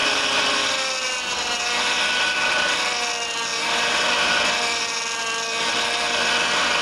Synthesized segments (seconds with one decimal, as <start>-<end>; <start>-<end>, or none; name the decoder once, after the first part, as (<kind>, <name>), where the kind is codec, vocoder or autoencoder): none